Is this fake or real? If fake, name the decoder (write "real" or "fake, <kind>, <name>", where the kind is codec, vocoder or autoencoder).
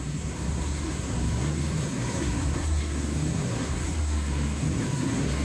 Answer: fake, codec, SNAC